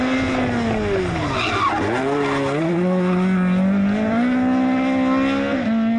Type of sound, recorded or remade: recorded